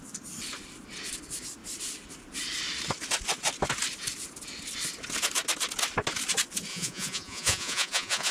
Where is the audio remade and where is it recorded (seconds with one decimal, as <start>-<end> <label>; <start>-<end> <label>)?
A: 0.0-6.7 recorded; 6.7-8.3 remade